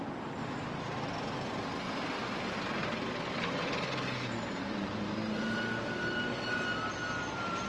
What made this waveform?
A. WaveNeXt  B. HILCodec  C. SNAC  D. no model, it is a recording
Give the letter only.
D